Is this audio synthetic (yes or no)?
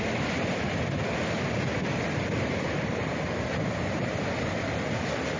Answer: no